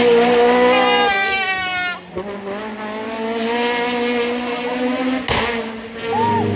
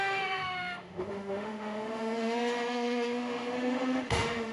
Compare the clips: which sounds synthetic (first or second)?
second